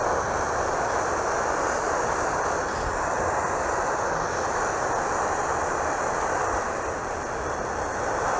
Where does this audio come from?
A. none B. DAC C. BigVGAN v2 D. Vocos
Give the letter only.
A